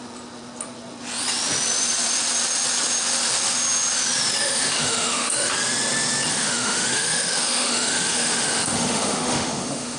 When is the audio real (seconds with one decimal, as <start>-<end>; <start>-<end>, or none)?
0.0-4.4; 5.5-6.3